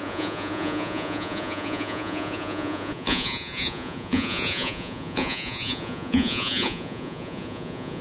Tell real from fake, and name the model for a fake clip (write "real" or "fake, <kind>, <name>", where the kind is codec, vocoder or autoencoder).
fake, vocoder, Vocos